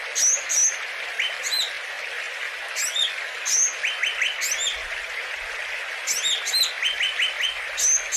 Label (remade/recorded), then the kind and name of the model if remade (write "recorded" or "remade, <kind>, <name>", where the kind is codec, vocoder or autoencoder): recorded